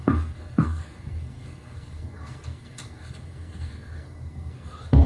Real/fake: fake